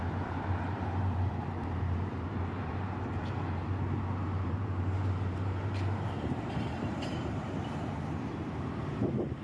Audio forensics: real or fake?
fake